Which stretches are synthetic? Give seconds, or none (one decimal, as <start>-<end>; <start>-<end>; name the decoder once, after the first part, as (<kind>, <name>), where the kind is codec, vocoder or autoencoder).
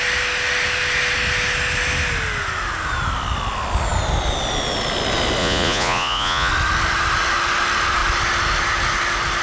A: 5.4-6.5 (vocoder, Vocos)